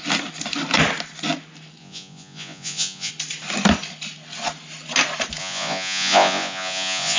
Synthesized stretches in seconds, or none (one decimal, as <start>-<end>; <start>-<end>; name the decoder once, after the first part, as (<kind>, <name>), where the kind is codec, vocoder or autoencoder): 1.8-3.1 (vocoder, Vocos); 5.4-7.2